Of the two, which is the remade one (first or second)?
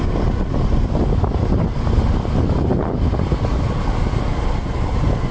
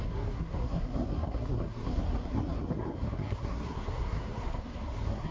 second